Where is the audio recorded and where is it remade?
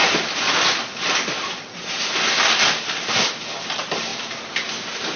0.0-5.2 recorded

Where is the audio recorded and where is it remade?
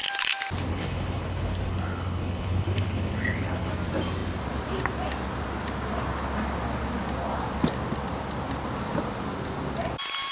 0.0-0.7 recorded; 0.7-3.7 remade; 3.7-10.3 recorded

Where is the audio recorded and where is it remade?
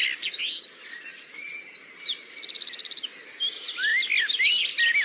0.0-1.1 recorded; 1.1-3.1 remade; 3.1-5.0 recorded